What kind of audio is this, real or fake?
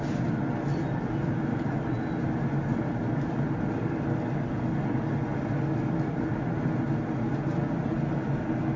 real